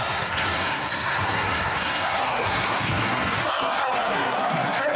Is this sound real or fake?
fake